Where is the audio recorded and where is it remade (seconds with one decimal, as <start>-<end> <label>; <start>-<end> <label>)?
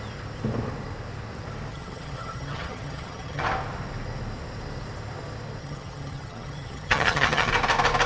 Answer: 0.0-1.7 recorded; 1.7-3.4 remade; 3.4-5.6 recorded; 5.6-7.5 remade; 7.5-8.1 recorded